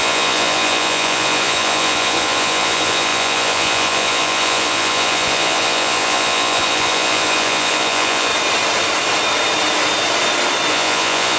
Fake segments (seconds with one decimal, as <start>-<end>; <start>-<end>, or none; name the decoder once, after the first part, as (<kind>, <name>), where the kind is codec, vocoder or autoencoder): 0.0-8.3 (vocoder, Vocos); 10.7-11.4